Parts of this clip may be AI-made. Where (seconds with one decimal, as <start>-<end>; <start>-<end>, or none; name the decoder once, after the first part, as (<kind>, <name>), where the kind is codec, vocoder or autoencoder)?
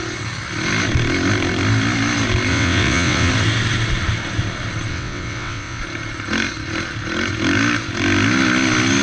2.5-3.3 (vocoder, WaveNeXt); 4.9-5.8